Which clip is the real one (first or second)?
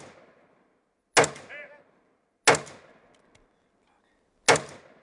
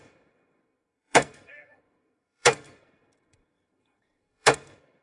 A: first